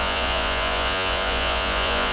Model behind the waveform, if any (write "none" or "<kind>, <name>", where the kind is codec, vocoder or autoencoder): vocoder, Vocos